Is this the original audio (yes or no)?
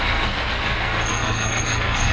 no